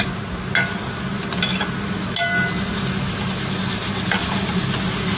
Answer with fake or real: real